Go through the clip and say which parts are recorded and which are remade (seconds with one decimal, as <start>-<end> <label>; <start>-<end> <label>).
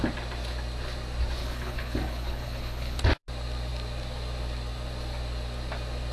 0.0-1.4 recorded; 1.4-3.0 remade; 3.0-6.1 recorded